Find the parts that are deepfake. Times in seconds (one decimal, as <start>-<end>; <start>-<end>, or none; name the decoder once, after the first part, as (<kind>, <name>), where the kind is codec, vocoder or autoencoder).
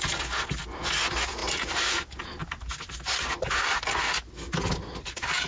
1.4-3.9 (vocoder, BigVGAN v2)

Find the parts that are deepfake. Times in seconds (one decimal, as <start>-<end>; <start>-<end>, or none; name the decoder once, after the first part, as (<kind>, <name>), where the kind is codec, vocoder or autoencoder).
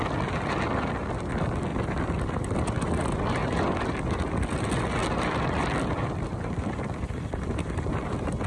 1.7-2.6 (vocoder, BigVGAN v2); 5.0-7.9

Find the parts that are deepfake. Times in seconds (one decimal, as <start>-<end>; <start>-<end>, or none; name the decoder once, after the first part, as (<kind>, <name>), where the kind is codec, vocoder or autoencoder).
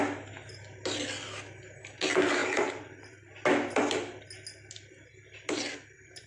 2.4-3.4 (vocoder, BigVGAN v2)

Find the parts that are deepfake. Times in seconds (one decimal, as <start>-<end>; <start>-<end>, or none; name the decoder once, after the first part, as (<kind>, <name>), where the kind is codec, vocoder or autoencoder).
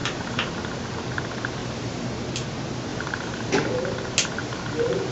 0.0-0.5 (vocoder, BigVGAN v2); 1.6-2.1; 2.9-3.5; 4.4-5.1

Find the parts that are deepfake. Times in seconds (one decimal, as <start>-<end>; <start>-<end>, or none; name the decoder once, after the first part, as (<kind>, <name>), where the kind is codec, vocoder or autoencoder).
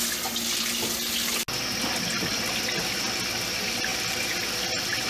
3.9-5.1 (vocoder, BigVGAN v2)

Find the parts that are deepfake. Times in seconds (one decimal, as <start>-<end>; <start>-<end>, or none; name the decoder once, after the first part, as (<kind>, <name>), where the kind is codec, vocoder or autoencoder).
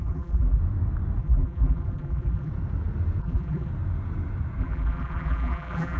0.0-0.6 (vocoder, BigVGAN v2); 1.2-2.5; 3.2-3.7; 4.6-6.0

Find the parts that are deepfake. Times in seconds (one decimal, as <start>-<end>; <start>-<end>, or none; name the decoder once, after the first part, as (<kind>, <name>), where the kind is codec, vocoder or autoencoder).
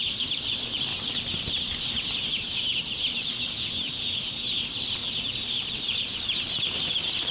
0.0-0.9 (vocoder, BigVGAN v2); 2.3-7.3